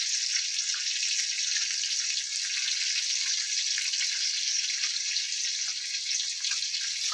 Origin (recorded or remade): recorded